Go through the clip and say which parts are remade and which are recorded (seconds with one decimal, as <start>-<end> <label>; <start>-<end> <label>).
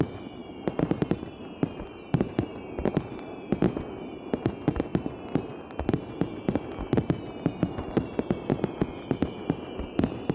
0.0-0.4 recorded; 0.4-2.1 remade; 2.1-10.3 recorded